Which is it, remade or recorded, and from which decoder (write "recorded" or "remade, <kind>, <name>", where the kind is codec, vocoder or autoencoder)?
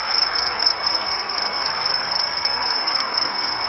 remade, codec, SNAC